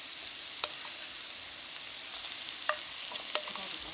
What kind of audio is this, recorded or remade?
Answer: recorded